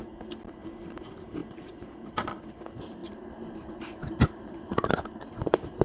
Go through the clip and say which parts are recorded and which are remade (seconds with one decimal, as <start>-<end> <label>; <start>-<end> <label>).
0.0-5.8 remade

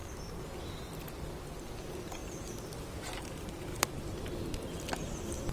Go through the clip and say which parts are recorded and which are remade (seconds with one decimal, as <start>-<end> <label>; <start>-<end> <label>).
0.0-3.7 recorded; 3.7-4.8 remade; 4.8-5.5 recorded

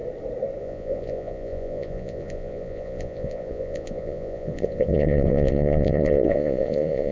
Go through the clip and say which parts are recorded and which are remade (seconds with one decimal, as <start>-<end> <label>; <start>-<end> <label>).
0.0-0.6 recorded; 0.6-7.1 remade

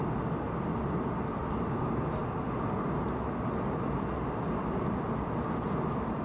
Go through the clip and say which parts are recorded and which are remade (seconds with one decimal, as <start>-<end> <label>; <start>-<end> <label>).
0.0-6.2 recorded

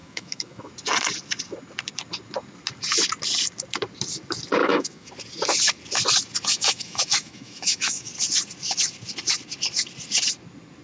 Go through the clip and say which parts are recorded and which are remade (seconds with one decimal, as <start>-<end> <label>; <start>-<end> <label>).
0.0-0.7 remade; 0.7-4.6 recorded; 4.6-5.1 remade; 5.1-6.5 recorded; 6.5-8.1 remade; 8.1-10.8 recorded

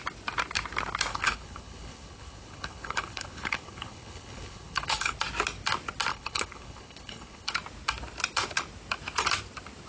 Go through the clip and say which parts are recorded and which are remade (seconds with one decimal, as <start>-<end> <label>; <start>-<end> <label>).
0.0-1.1 recorded; 1.1-5.1 remade; 5.1-6.1 recorded; 6.1-7.5 remade; 7.5-9.9 recorded